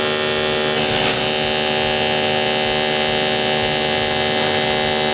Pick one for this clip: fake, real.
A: real